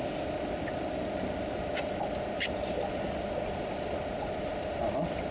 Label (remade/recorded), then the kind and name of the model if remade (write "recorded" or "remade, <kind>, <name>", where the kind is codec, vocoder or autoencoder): recorded